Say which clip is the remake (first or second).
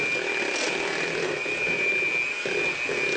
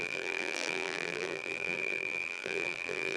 second